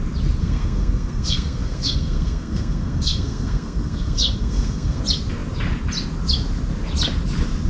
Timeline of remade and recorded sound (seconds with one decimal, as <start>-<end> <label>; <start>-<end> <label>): 0.0-0.4 recorded; 0.4-5.0 remade; 5.0-7.7 recorded